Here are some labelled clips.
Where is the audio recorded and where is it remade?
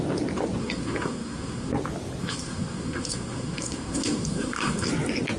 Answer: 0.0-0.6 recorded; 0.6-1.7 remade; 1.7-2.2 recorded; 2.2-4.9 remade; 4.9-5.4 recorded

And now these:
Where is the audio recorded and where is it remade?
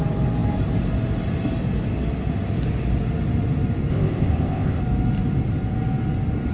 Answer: 0.0-3.9 recorded; 3.9-4.8 remade; 4.8-6.5 recorded